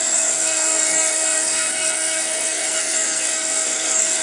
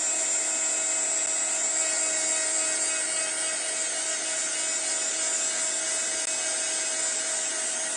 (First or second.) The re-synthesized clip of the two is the first